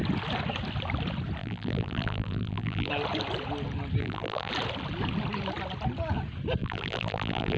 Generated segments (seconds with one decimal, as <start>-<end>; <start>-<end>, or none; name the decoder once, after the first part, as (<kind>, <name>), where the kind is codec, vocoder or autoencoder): 1.4-2.9 (vocoder, BigVGAN v2); 4.0-4.5; 6.6-7.6